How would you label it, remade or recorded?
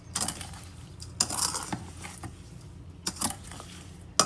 recorded